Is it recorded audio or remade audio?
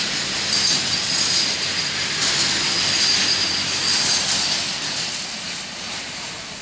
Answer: recorded